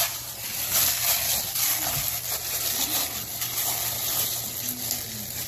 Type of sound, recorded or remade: recorded